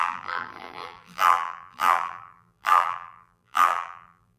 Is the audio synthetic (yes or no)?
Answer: yes